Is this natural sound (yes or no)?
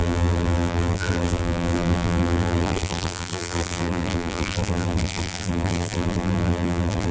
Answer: no